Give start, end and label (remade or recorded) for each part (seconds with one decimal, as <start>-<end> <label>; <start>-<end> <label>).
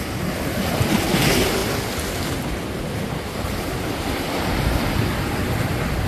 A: 0.0-6.1 recorded